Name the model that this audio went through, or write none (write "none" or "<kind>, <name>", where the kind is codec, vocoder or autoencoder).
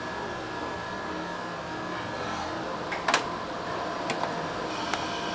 none